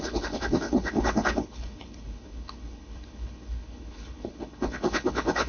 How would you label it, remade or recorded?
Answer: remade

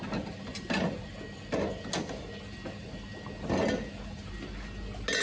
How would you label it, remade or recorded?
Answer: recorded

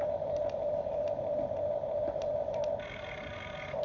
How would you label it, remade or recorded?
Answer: recorded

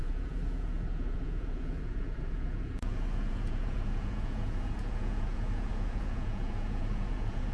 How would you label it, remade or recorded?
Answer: remade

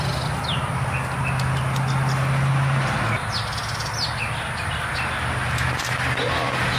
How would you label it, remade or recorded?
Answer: recorded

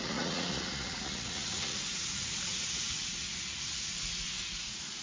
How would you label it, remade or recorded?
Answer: remade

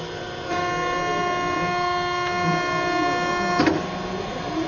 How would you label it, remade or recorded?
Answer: recorded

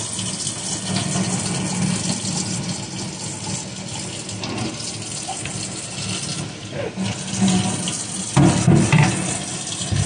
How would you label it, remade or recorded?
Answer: recorded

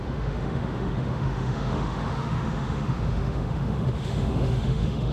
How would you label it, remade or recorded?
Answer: remade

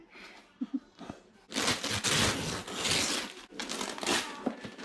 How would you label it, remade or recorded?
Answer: recorded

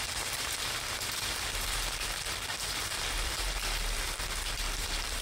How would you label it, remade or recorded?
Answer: remade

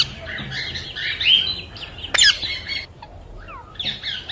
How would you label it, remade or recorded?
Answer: recorded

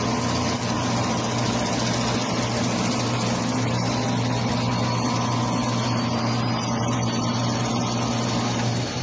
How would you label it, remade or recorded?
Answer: recorded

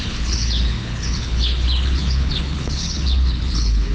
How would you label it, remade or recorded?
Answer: remade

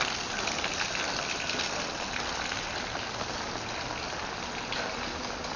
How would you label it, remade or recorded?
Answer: recorded